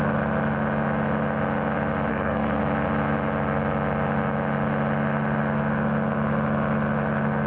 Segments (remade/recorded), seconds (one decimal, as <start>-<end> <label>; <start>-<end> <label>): 0.0-2.1 recorded; 2.1-2.6 remade; 2.6-7.5 recorded